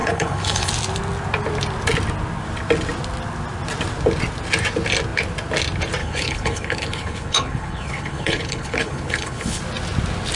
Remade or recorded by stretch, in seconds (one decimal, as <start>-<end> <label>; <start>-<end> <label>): 0.0-0.7 remade; 0.7-6.0 recorded; 6.0-9.6 remade; 9.6-10.4 recorded